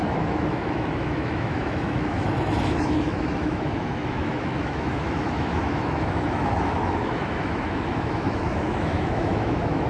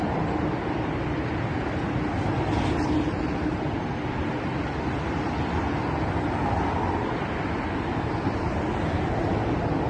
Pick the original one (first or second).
second